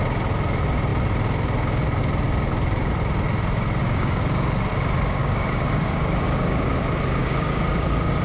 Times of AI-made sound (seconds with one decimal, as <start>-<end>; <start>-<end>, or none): 3.8-4.7; 5.2-6.8; 7.2-8.2